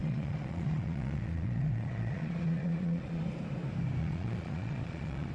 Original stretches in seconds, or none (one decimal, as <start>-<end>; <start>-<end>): 3.2-4.0